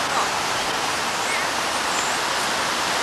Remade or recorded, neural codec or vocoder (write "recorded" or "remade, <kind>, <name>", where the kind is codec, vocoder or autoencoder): recorded